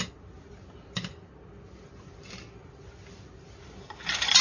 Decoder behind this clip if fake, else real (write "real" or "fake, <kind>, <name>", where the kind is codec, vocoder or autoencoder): fake, vocoder, BigVGAN v2